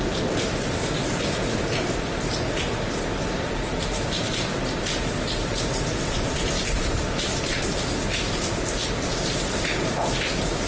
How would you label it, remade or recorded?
recorded